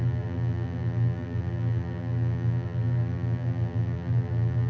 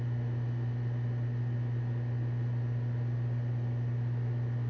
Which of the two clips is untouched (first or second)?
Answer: second